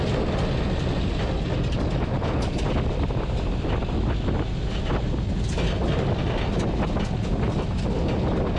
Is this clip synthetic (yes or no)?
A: no